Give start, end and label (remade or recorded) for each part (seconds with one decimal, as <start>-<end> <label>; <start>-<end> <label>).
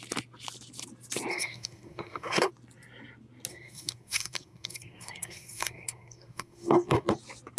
0.0-1.3 recorded; 1.3-2.5 remade; 2.5-3.5 recorded; 3.5-7.1 remade; 7.1-7.6 recorded